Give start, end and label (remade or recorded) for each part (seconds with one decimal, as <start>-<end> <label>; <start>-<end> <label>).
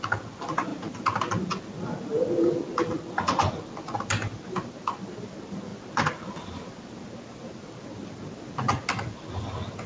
0.0-9.9 recorded